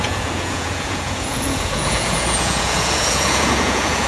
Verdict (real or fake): fake